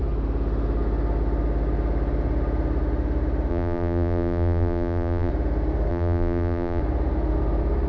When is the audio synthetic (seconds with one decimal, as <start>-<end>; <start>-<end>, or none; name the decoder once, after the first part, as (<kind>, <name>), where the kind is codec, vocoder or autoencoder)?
3.5-5.3 (vocoder, BigVGAN v2); 5.9-6.8